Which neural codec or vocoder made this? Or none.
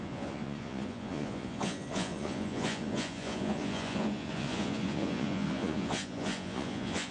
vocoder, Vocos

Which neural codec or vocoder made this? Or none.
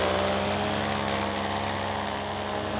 none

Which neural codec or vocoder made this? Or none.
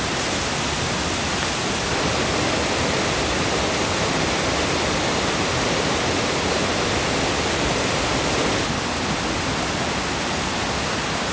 none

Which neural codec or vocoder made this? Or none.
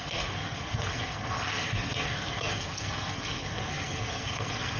codec, SNAC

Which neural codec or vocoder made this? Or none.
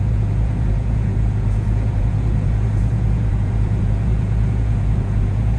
vocoder, Vocos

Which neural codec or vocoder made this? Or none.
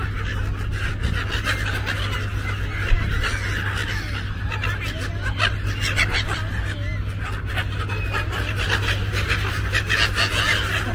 none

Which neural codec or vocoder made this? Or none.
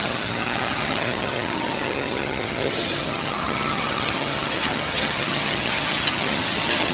vocoder, HiFi-GAN